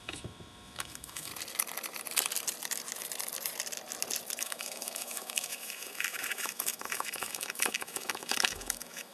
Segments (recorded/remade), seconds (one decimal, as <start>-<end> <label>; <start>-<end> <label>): 0.0-1.3 remade; 1.3-4.4 recorded; 4.4-9.1 remade